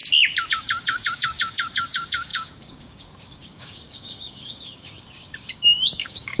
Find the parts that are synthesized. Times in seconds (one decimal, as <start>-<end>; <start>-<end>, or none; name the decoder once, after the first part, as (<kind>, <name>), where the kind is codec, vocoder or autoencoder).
0.5-6.4 (codec, DAC)

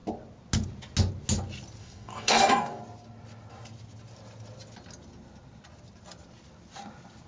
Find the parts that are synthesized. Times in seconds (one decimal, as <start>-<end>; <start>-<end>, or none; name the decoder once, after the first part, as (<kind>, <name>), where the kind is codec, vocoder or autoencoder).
1.8-2.8 (codec, DAC)

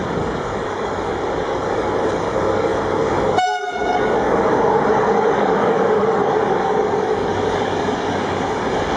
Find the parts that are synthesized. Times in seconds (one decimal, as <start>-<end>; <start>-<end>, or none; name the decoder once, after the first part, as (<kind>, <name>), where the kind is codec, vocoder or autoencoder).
0.0-9.0 (codec, DAC)

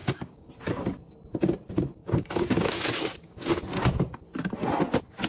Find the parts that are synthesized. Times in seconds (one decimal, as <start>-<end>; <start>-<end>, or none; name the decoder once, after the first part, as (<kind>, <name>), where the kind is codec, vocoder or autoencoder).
0.0-0.5 (codec, DAC); 2.0-3.6

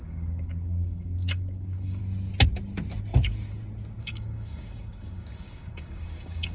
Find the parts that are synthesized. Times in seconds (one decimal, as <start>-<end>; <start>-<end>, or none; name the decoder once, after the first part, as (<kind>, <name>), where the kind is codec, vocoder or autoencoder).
0.0-2.0 (codec, DAC); 4.0-6.5

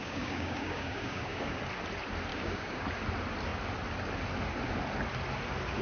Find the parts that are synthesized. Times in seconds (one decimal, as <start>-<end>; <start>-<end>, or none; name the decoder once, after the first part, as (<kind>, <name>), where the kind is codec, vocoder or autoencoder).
0.0-1.6 (codec, DAC); 2.3-2.8

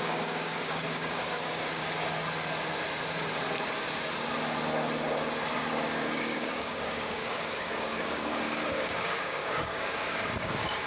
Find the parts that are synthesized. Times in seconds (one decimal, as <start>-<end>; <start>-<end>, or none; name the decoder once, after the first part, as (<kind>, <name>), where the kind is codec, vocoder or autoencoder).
0.0-1.8 (codec, DAC); 6.2-10.9